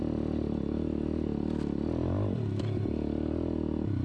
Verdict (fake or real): real